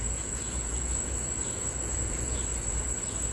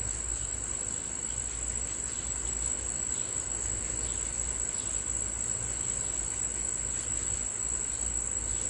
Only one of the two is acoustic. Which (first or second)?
second